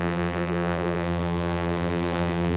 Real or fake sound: fake